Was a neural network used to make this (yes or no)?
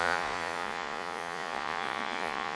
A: yes